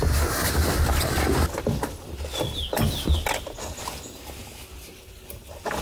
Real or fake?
real